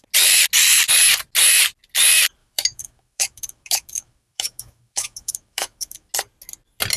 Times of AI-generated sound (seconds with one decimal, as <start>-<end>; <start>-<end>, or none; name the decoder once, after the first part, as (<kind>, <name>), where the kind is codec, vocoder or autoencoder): 2.4-6.1 (autoencoder, DAC-VAE)